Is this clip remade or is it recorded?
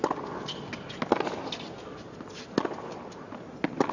recorded